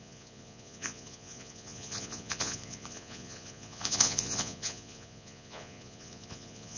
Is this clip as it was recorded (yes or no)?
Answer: no